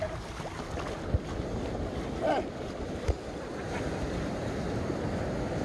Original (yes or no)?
yes